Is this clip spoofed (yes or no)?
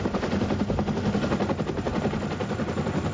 no